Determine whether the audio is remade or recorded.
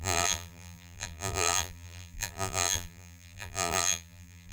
remade